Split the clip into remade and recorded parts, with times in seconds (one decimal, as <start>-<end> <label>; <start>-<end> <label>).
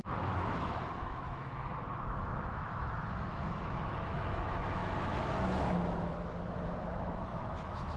0.0-8.0 remade